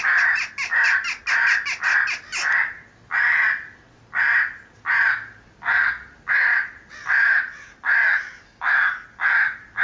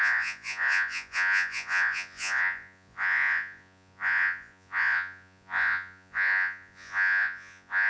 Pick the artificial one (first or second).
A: second